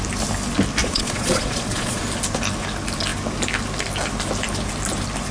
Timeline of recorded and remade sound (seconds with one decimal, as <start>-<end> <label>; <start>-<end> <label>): 0.0-0.8 recorded; 0.8-2.0 remade; 2.0-5.3 recorded